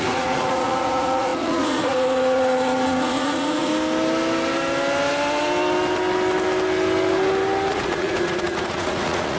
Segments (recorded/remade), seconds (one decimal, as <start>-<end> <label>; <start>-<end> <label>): 0.0-3.7 remade; 3.7-7.7 recorded; 7.7-9.4 remade